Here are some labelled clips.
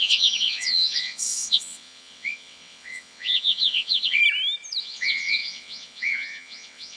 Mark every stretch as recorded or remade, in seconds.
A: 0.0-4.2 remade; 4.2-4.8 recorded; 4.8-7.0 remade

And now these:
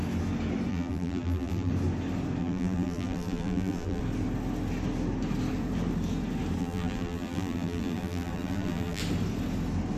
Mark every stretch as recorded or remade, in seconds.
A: 0.0-0.7 recorded; 0.7-1.7 remade; 1.7-2.4 recorded; 2.4-4.0 remade; 4.0-6.6 recorded; 6.6-9.0 remade; 9.0-10.0 recorded